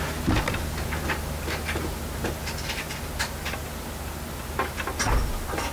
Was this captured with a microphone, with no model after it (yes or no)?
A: yes